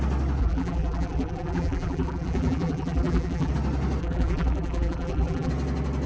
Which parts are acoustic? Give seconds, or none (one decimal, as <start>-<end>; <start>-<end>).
0.0-0.4; 3.5-4.0; 5.5-6.1